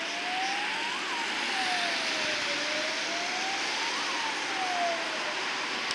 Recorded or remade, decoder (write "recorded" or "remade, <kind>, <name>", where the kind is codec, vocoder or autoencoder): recorded